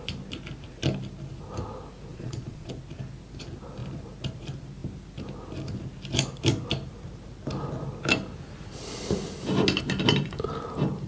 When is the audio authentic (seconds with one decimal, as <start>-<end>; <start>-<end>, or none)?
0.0-2.1; 2.7-11.1